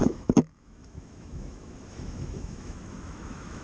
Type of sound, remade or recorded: remade